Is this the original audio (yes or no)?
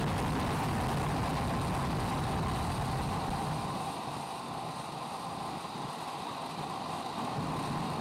yes